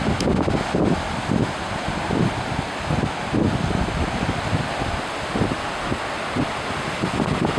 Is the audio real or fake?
real